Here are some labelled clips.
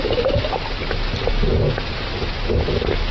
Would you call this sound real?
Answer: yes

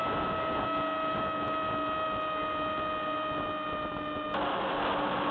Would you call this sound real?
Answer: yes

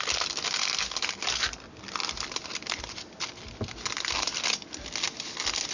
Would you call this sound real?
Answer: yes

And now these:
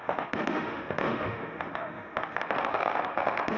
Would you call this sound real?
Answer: no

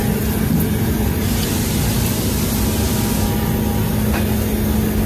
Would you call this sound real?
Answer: yes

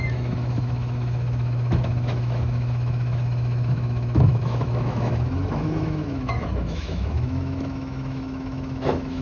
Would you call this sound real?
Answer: no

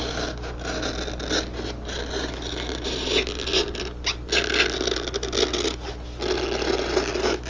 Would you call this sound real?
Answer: yes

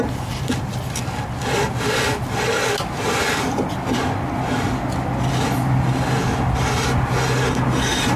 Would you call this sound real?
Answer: yes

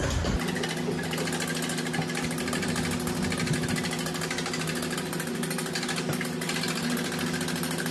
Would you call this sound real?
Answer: yes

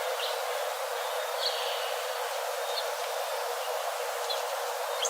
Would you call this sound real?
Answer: yes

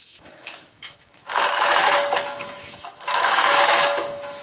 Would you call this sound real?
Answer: no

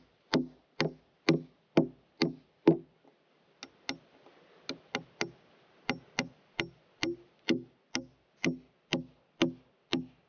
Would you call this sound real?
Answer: yes